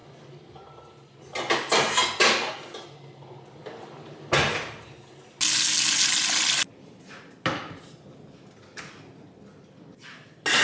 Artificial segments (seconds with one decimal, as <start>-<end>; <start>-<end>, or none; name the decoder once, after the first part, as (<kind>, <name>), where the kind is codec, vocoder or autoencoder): none